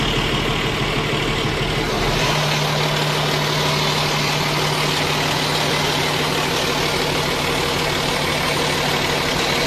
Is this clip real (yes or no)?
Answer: yes